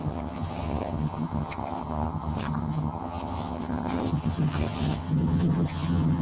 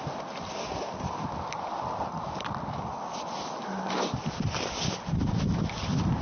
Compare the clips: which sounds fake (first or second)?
first